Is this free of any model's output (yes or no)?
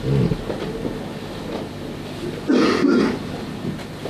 yes